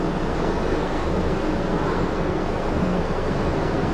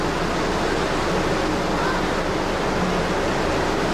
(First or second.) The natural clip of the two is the second